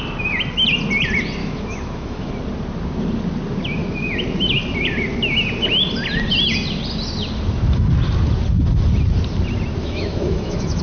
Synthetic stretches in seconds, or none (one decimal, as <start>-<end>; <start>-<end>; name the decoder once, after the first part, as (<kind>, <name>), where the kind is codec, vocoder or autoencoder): 1.4-2.3 (autoencoder, DAC-VAE); 9.8-10.8